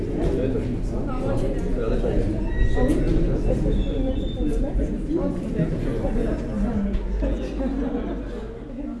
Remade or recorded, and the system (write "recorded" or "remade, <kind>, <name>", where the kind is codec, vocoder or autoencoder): recorded